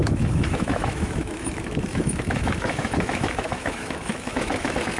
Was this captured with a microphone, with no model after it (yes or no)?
no